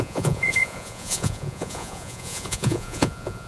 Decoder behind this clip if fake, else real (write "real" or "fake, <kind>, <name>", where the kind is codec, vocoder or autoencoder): fake, vocoder, Vocos